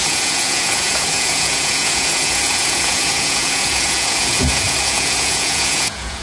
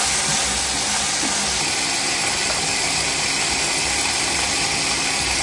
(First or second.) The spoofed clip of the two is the first